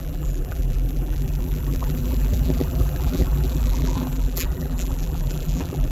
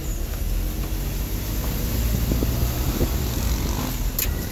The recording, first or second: second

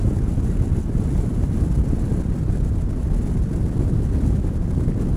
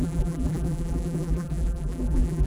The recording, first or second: first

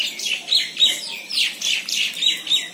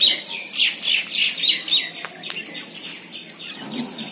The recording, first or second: second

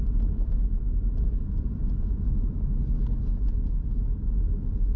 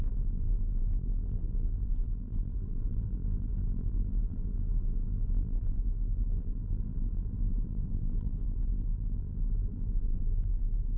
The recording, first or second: first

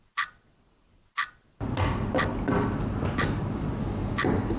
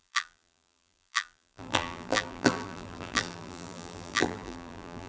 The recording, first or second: first